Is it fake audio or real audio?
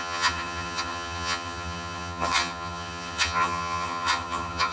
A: fake